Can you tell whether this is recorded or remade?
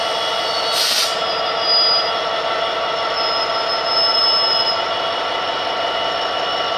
recorded